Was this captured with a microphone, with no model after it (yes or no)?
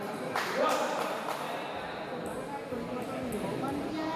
yes